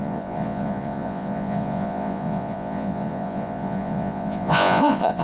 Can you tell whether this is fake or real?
fake